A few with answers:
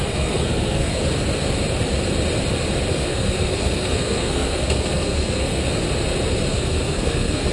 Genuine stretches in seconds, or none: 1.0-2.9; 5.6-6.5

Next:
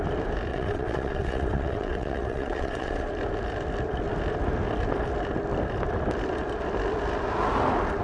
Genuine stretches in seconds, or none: 0.0-0.5; 3.1-8.0

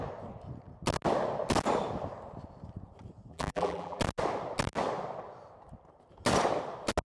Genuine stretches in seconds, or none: 0.0-3.3; 4.0-7.0

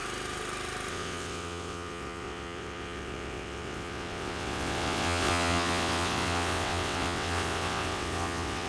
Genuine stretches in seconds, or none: 0.0-0.9

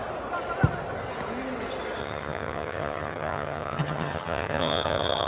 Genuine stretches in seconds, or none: 0.0-2.0

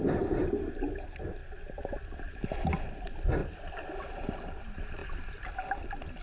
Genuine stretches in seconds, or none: 0.0-6.2

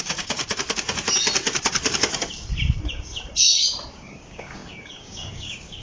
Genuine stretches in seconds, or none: 0.4-3.9

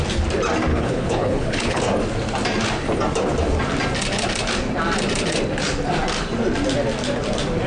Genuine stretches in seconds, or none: 0.0-0.7; 1.8-7.7